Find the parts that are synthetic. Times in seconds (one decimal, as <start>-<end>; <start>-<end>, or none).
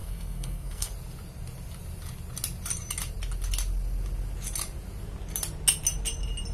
0.0-0.9